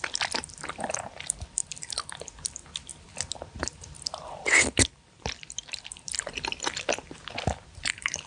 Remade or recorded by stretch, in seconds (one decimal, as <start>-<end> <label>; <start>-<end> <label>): 0.0-2.9 remade; 2.9-4.0 recorded; 4.0-8.3 remade